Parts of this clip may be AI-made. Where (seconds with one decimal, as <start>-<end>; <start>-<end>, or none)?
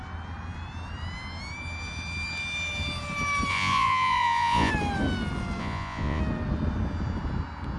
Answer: 3.5-4.7; 5.6-6.2